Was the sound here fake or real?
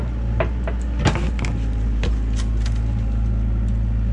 real